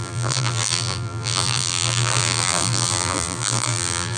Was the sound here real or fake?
fake